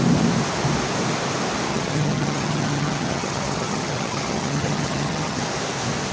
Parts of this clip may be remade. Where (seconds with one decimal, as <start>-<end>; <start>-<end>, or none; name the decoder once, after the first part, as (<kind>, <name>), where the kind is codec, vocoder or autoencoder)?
1.7-5.4 (vocoder, HiFi-GAN)

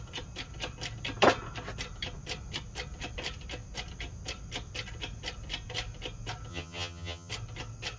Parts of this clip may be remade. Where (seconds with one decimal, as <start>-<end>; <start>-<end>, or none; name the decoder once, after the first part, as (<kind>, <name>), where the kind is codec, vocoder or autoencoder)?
6.5-7.3 (vocoder, HiFi-GAN)

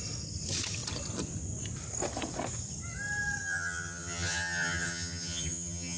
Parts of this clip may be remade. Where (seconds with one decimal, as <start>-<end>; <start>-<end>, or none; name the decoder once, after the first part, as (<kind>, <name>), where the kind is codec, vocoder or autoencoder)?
3.4-6.0 (vocoder, HiFi-GAN)